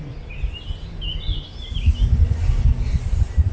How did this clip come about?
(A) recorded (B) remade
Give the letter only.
A